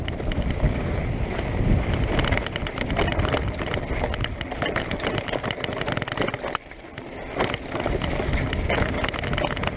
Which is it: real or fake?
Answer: real